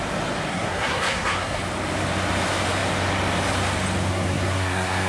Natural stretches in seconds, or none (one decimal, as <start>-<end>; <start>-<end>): 0.0-0.5; 1.6-4.1